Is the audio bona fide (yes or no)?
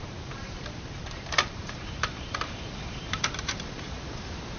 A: no